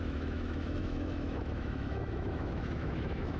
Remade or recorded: remade